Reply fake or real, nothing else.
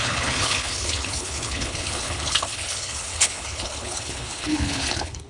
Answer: fake